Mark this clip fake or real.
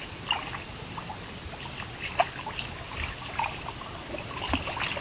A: real